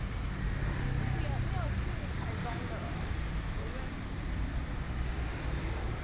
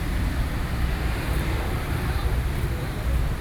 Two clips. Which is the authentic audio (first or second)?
first